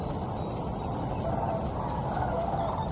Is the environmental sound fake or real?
real